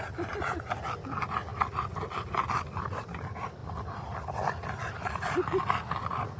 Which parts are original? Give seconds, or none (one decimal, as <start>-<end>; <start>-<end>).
0.0-6.4